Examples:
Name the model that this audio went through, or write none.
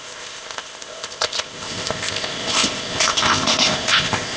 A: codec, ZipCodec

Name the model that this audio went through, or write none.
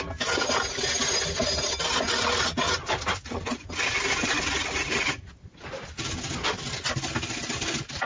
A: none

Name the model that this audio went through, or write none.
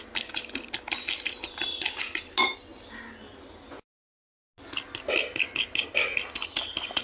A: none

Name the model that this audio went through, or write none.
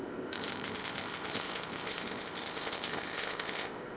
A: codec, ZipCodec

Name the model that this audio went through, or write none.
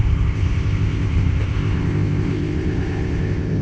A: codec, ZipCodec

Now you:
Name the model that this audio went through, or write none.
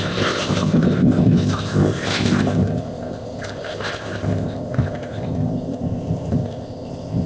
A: codec, ZipCodec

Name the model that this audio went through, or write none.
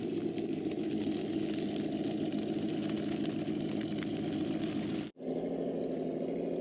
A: none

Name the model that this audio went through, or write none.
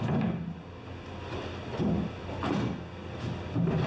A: none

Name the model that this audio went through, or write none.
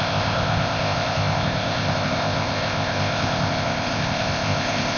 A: codec, ZipCodec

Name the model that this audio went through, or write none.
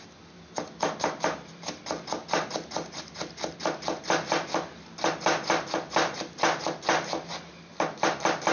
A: none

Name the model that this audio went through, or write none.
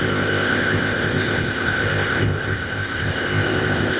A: codec, ZipCodec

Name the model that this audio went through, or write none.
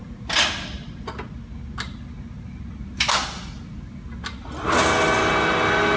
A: none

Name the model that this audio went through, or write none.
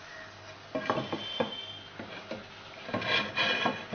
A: none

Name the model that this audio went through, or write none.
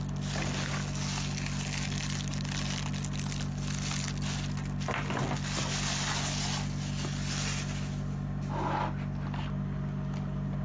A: none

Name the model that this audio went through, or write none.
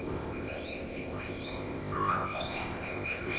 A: codec, ZipCodec